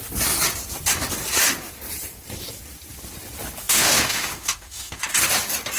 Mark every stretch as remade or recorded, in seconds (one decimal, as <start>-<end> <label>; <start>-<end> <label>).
0.0-3.6 recorded; 3.6-5.0 remade; 5.0-5.8 recorded